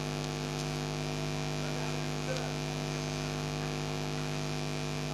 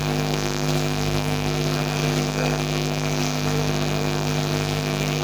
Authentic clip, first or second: first